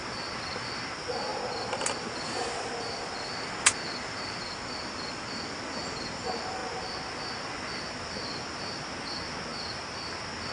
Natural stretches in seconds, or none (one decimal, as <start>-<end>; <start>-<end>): 0.0-10.5